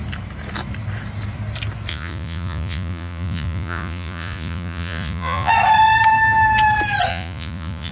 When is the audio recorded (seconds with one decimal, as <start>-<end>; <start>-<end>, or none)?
0.0-1.9; 5.5-7.1